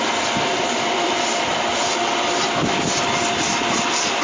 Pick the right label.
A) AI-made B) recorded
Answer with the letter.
B